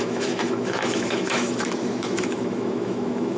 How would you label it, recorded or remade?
remade